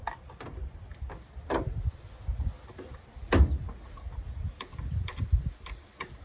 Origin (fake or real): real